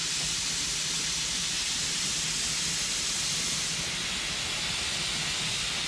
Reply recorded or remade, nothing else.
recorded